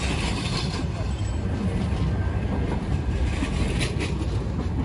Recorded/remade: recorded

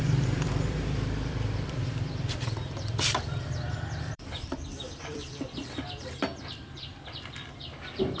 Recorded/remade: remade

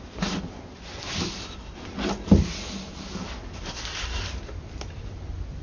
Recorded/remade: recorded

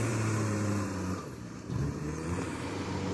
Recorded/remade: remade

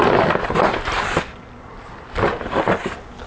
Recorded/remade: recorded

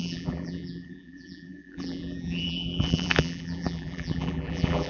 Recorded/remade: remade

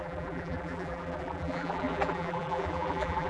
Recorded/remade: remade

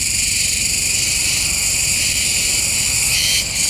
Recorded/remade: remade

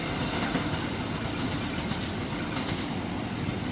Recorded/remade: remade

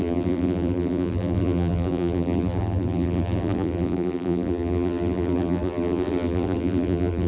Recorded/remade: remade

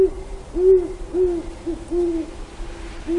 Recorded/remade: recorded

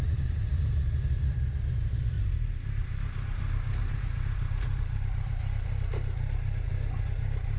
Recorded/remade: remade